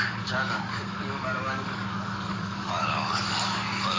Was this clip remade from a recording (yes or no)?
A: yes